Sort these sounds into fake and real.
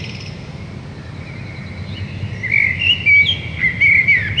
real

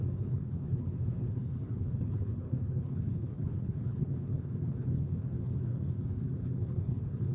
fake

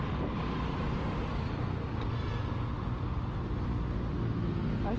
real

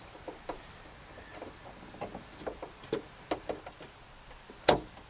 real